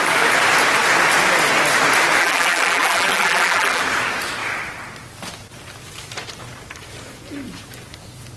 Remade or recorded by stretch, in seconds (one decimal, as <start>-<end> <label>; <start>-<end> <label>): 0.0-2.2 recorded; 2.2-3.8 remade; 3.8-8.4 recorded